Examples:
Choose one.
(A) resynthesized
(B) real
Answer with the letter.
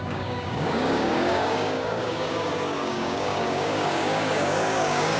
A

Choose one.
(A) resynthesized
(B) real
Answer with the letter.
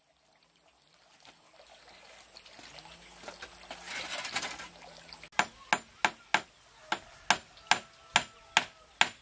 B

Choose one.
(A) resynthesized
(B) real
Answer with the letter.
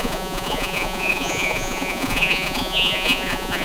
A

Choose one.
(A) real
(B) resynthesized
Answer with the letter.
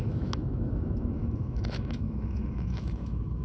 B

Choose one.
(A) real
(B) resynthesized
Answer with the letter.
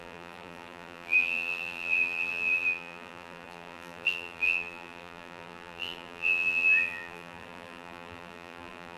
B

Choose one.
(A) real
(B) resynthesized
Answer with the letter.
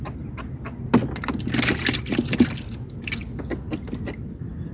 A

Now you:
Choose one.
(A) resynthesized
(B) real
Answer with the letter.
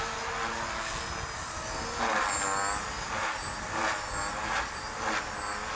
B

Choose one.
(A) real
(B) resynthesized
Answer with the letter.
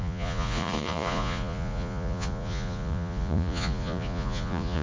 B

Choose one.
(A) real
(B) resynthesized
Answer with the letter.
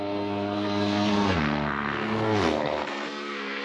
B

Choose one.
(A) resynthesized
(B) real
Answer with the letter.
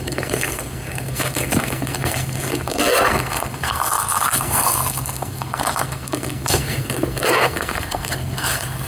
A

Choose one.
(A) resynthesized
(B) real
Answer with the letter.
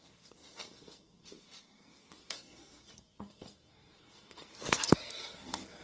A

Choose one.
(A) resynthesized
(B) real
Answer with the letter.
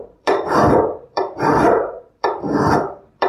A